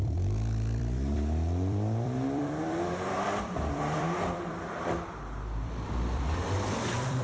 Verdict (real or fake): fake